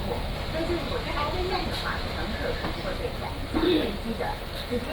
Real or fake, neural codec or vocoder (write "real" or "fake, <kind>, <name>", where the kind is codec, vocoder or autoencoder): real